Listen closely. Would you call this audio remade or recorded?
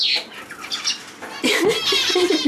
recorded